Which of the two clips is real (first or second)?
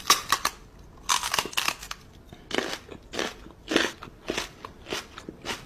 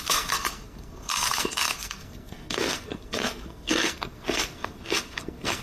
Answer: first